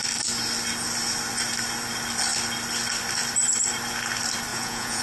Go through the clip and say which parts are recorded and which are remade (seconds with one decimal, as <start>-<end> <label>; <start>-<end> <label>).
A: 0.0-4.5 recorded; 4.5-5.0 remade